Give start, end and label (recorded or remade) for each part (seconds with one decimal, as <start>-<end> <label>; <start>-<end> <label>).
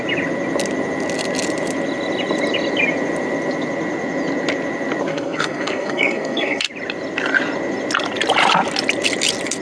0.0-5.1 recorded; 5.1-6.7 remade; 6.7-9.6 recorded